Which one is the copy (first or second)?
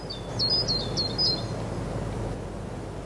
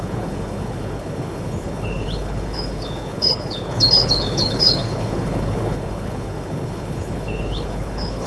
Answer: second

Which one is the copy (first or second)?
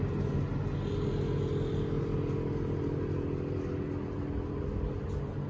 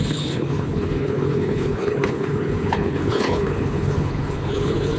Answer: second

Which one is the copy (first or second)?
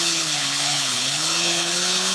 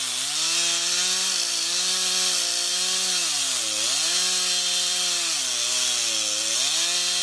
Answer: first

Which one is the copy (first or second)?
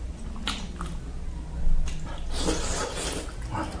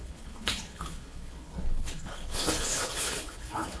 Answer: second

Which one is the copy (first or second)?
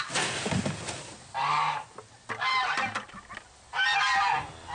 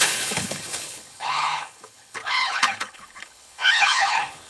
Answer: second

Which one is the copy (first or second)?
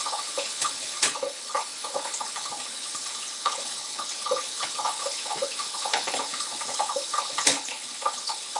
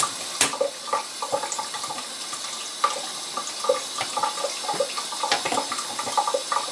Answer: first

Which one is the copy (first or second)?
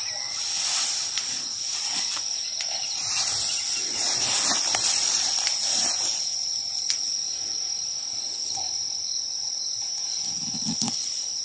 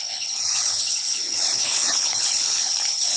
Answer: second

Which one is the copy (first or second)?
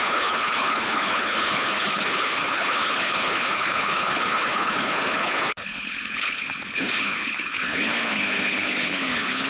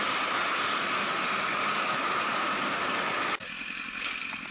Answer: first